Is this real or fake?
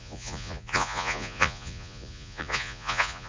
fake